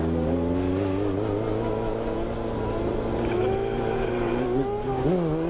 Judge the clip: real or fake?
real